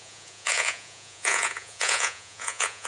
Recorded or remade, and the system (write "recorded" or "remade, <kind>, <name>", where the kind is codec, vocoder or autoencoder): remade, vocoder, Vocos